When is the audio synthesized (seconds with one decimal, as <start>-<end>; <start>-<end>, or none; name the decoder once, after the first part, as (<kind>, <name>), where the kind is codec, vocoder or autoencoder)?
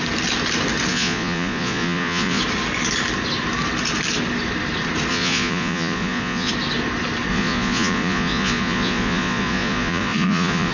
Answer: 0.9-2.4 (vocoder, Vocos); 5.1-6.5; 7.3-10.7